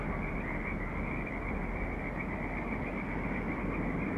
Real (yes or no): yes